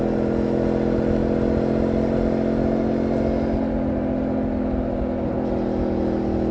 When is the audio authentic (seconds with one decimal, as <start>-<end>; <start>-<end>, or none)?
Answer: 0.0-6.5